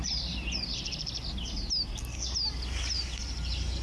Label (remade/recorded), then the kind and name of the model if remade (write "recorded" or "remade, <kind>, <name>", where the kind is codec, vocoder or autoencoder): recorded